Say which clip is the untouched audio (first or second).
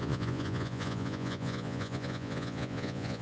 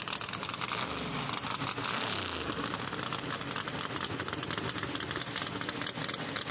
second